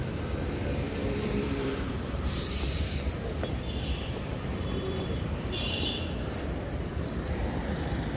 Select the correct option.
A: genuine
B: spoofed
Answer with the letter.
B